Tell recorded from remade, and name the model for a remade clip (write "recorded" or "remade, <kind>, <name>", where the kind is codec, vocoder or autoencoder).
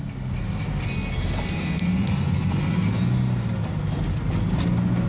recorded